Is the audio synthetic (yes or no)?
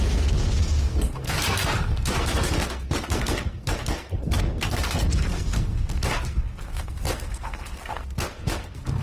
yes